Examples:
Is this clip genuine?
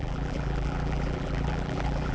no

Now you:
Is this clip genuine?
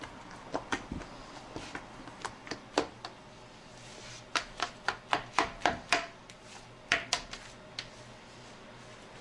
yes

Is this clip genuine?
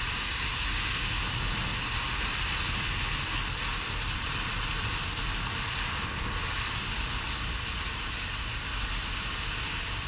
yes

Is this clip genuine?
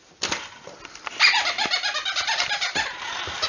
no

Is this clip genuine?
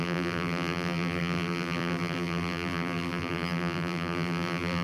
no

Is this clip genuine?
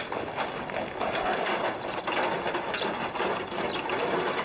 yes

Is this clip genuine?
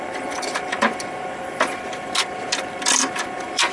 no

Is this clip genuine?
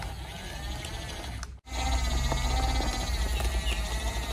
yes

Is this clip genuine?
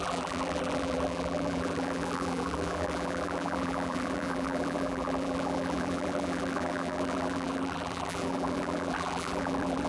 no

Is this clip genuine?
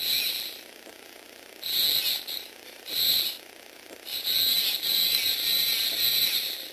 no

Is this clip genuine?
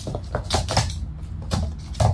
yes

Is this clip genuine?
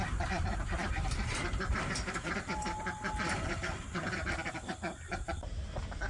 no